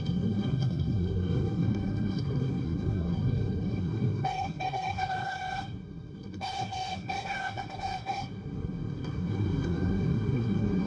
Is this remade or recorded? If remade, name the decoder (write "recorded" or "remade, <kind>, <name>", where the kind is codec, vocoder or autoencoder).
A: remade, codec, SNAC